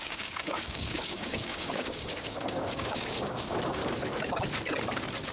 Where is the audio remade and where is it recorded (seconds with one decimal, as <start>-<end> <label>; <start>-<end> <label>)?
0.0-3.8 remade; 3.8-5.3 recorded